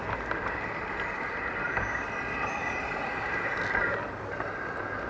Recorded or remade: recorded